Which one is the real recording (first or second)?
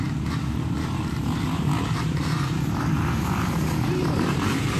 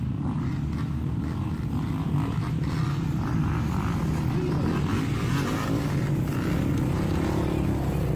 second